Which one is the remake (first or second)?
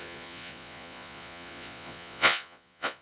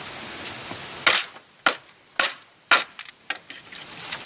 first